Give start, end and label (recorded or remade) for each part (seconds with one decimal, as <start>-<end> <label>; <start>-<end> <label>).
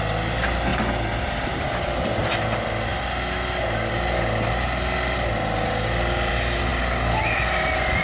0.0-8.0 recorded